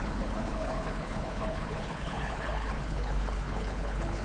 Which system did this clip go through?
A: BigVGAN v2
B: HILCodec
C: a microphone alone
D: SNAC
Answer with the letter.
B